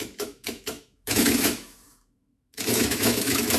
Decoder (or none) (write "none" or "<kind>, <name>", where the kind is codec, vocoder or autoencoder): autoencoder, DAC-VAE